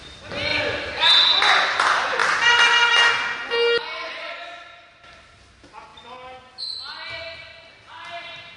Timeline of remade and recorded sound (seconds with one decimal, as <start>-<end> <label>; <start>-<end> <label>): 0.0-8.6 recorded